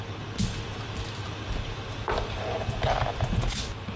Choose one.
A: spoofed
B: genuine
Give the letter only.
B